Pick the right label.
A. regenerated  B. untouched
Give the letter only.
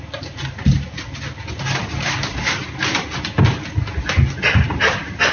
B